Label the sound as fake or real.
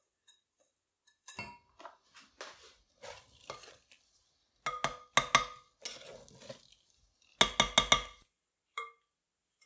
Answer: real